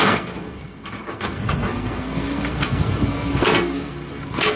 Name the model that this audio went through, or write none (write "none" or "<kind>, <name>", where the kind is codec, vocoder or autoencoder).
codec, SNAC